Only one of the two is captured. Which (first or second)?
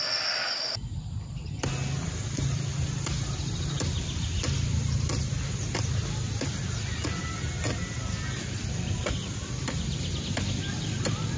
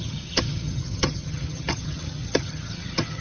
first